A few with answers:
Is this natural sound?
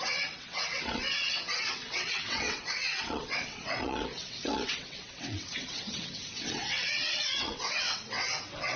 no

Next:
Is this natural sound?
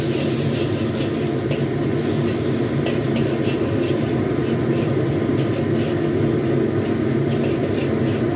yes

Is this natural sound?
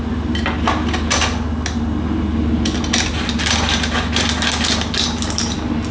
yes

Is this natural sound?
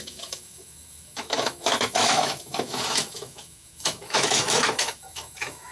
no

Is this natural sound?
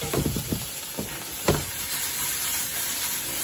no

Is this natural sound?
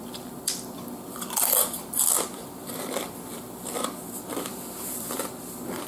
no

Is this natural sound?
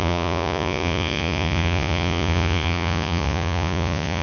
no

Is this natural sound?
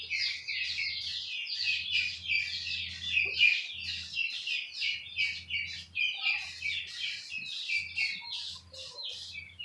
yes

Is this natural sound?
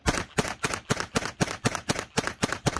yes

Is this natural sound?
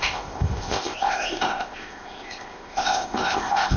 no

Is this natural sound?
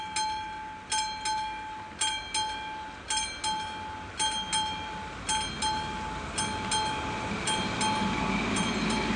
yes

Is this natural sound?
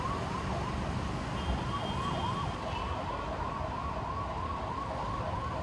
yes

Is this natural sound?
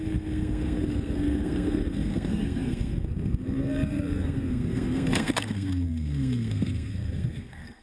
no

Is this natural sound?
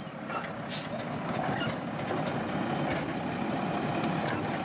yes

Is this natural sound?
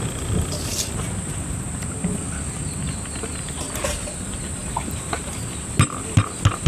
yes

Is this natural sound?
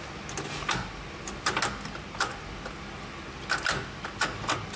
yes